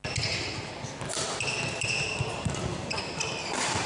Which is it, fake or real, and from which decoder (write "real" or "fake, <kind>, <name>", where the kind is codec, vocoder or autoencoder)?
real